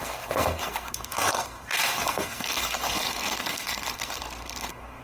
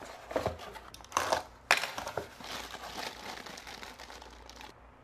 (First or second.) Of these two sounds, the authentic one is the second